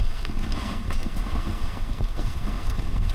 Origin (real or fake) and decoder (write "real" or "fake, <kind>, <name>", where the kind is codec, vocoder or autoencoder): fake, codec, SNAC